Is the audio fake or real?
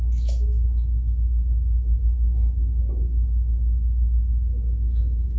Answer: fake